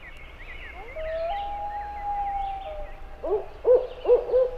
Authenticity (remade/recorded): recorded